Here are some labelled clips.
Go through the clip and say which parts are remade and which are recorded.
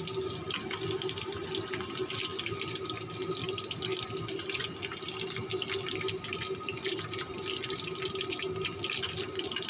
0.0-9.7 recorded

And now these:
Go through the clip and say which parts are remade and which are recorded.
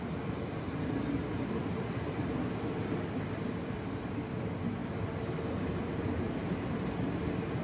0.0-4.8 recorded; 4.8-5.7 remade; 5.7-7.6 recorded